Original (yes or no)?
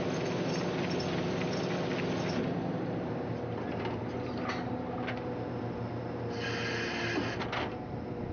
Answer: yes